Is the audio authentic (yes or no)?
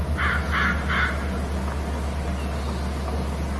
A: yes